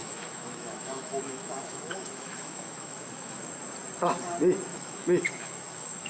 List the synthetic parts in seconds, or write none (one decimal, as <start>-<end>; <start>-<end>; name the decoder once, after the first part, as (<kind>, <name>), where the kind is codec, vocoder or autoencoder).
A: 0.0-3.5 (autoencoder, DAC-VAE); 4.7-6.1